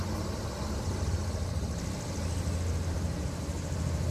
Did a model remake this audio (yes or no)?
no